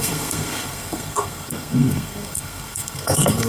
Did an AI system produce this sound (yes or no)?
yes